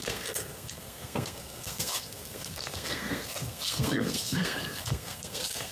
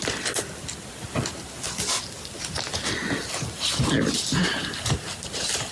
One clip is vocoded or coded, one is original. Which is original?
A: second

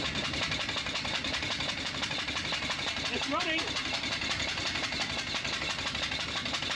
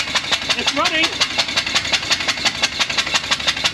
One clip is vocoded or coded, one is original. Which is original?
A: second